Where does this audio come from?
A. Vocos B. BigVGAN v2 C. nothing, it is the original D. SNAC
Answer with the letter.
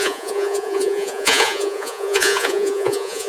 A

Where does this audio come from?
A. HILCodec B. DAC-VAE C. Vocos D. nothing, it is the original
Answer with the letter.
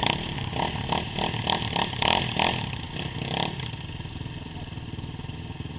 D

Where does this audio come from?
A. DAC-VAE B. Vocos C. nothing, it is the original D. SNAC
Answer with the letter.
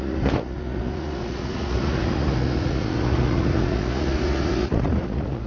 B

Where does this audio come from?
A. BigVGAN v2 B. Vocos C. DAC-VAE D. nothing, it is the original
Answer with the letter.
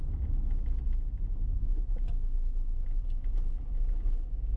D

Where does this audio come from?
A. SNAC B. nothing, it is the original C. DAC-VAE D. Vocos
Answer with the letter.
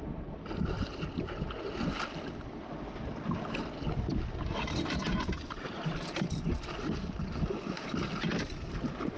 B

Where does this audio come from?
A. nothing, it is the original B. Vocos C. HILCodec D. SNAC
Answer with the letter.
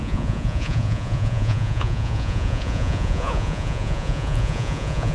B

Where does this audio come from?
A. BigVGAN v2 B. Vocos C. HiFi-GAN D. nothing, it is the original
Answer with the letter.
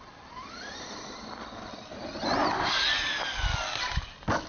D